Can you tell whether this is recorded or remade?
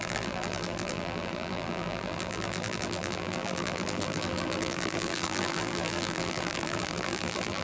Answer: remade